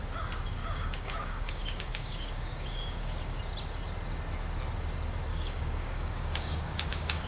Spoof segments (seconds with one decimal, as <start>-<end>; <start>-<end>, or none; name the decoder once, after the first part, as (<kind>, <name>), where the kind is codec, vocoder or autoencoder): 0.6-3.4 (codec, DAC); 5.3-7.3